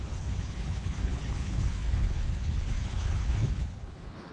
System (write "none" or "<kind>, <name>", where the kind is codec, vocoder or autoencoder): codec, HILCodec